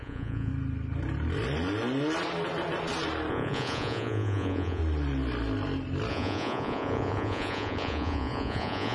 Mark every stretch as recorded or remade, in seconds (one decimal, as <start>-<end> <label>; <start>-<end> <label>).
0.0-0.5 remade; 0.5-3.3 recorded; 3.3-4.8 remade; 4.8-6.1 recorded; 6.1-8.9 remade